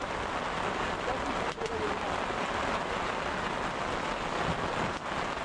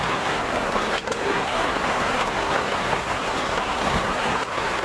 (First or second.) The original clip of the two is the first